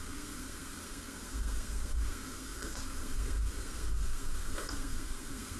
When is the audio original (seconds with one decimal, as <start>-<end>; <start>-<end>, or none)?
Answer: none

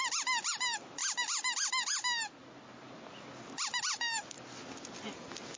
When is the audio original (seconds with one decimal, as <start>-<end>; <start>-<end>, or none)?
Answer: 0.0-5.6

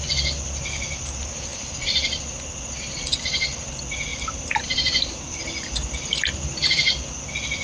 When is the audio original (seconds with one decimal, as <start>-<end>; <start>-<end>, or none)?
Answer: 0.0-4.1; 5.4-6.1; 6.7-7.6